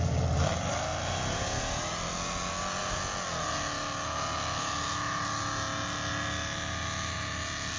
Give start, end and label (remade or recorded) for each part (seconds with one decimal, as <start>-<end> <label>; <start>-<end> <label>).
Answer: 0.0-7.8 recorded